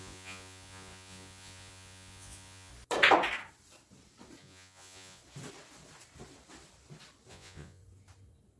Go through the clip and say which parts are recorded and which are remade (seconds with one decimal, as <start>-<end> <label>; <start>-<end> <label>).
0.0-2.7 remade; 2.7-4.4 recorded; 4.4-5.2 remade; 5.2-7.3 recorded; 7.3-7.8 remade; 7.8-8.6 recorded

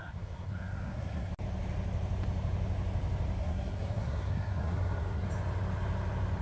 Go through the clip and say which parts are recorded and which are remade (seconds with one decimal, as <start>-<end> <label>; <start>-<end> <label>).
0.0-1.3 remade; 1.3-3.4 recorded; 3.4-5.3 remade; 5.3-6.4 recorded

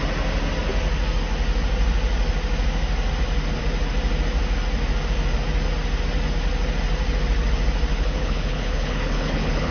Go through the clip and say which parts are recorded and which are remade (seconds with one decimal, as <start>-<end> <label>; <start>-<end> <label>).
0.0-7.9 recorded; 7.9-9.7 remade

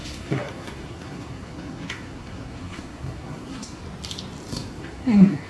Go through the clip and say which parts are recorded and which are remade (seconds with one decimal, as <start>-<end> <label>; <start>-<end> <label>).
0.0-3.8 remade; 3.8-4.5 recorded; 4.5-5.5 remade

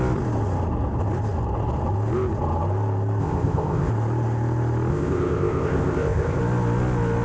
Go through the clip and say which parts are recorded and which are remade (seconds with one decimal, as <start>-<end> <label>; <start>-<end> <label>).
0.0-3.2 recorded; 3.2-3.9 remade; 3.9-4.9 recorded; 4.9-6.4 remade; 6.4-7.2 recorded